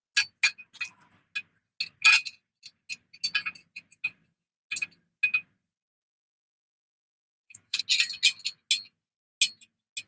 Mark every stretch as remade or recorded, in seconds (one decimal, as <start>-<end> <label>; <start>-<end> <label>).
0.0-6.9 recorded; 6.9-7.8 remade; 7.8-10.1 recorded